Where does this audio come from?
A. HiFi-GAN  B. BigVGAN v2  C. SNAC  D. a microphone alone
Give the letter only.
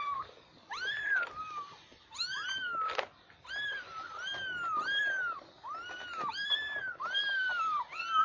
D